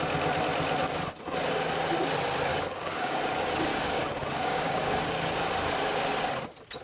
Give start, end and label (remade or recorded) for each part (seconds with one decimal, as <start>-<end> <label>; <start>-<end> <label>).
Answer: 0.0-2.5 recorded; 2.5-3.2 remade; 3.2-3.7 recorded; 3.7-5.5 remade; 5.5-6.8 recorded